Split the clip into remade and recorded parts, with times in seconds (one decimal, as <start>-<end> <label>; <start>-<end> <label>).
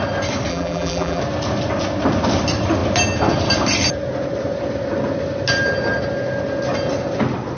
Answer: 0.0-0.5 recorded; 0.5-1.2 remade; 1.2-7.6 recorded